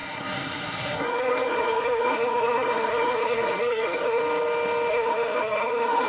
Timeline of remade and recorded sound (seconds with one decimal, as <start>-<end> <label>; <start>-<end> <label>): 0.0-4.2 remade; 4.2-4.9 recorded; 4.9-6.1 remade